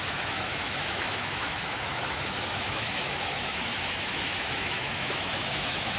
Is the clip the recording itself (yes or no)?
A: no